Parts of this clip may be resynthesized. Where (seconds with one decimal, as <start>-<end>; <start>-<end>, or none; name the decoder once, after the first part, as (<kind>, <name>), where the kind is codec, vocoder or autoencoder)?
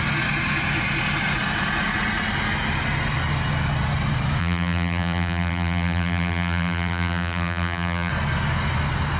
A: 4.4-8.1 (vocoder, BigVGAN v2)